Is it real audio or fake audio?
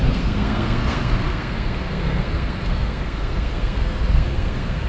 fake